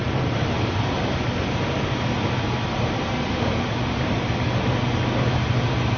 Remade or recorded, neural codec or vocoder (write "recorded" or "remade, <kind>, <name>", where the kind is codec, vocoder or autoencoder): recorded